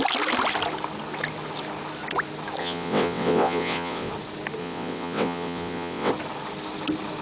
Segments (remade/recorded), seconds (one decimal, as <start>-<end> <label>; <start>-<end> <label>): 0.0-2.6 recorded; 2.6-4.1 remade; 4.1-4.6 recorded; 4.6-6.1 remade; 6.1-7.2 recorded

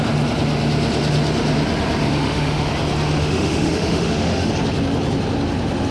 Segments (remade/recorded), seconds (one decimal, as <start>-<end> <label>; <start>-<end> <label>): 0.0-2.1 recorded; 2.1-2.7 remade; 2.7-3.2 recorded; 3.2-4.5 remade; 4.5-5.9 recorded

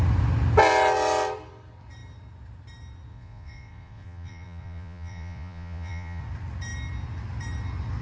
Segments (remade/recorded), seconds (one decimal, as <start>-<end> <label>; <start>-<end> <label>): 0.0-3.1 recorded; 3.1-6.2 remade; 6.2-8.0 recorded

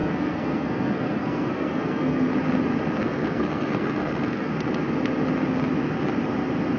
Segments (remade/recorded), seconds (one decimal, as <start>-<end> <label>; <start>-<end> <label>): 0.0-2.3 remade; 2.3-3.0 recorded; 3.0-4.5 remade; 4.5-6.8 recorded

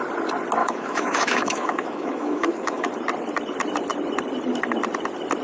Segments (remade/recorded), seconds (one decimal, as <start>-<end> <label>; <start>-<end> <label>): 0.0-0.6 recorded; 0.6-2.9 remade; 2.9-5.4 recorded